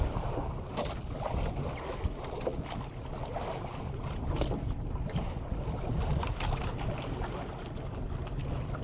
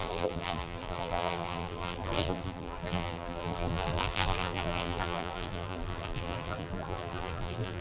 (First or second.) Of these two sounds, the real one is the first